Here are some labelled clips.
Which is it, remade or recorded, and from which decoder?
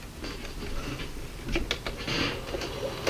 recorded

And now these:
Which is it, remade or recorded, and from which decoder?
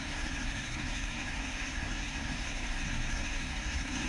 remade, codec, SNAC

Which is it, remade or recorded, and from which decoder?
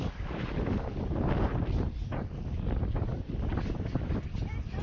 recorded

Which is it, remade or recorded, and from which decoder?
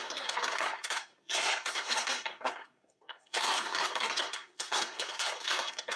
remade, codec, SNAC